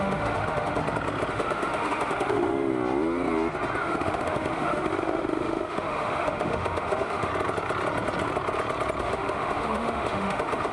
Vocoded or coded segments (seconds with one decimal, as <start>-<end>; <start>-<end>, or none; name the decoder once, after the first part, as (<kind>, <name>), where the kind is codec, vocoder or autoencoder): 0.0-0.8 (autoencoder, DAC-VAE); 1.3-2.7; 3.8-7.3; 9.0-10.7